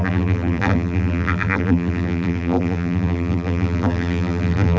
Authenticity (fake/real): fake